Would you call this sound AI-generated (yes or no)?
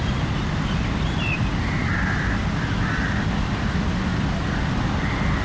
no